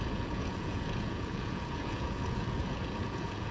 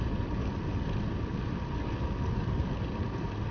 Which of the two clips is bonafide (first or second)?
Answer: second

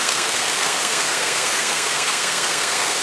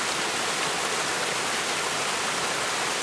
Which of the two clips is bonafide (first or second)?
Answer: second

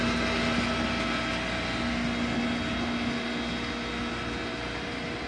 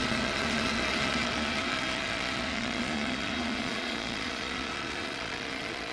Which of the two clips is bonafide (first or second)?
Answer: first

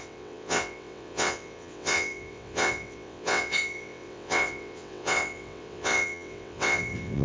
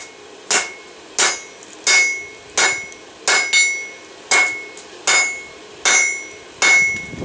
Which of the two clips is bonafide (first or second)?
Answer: second